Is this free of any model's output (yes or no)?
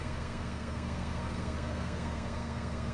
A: no